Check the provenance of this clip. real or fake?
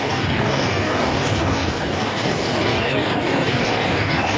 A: fake